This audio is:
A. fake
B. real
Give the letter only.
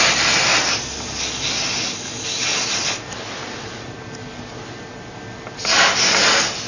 B